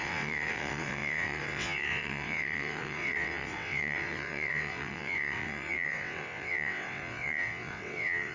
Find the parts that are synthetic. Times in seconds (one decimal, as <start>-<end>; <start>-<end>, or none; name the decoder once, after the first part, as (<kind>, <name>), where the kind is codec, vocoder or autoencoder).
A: 0.0-8.3 (vocoder, WaveNeXt)

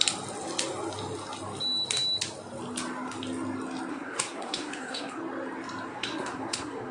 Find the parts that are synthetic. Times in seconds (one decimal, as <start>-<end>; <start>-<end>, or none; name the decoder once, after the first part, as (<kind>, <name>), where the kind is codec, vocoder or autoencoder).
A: 3.9-5.2 (codec, SNAC); 5.9-6.9